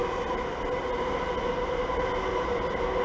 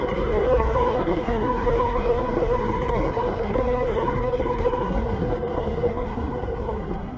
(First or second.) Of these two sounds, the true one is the first